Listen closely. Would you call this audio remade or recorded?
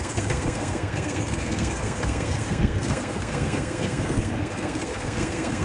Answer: remade